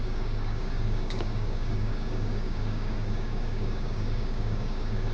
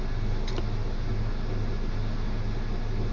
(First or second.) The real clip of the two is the second